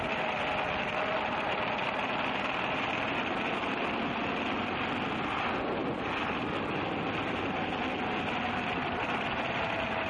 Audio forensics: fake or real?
real